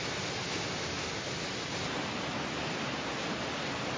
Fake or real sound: real